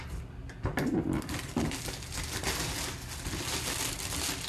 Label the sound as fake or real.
real